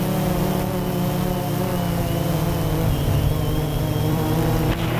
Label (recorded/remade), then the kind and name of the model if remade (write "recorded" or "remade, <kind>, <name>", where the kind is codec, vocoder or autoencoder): remade, vocoder, BigVGAN v2